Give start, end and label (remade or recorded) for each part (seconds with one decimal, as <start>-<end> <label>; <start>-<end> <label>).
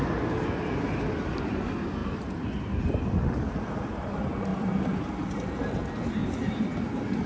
0.0-2.0 recorded; 2.0-2.8 remade; 2.8-4.5 recorded; 4.5-5.8 remade; 5.8-6.2 recorded; 6.2-7.3 remade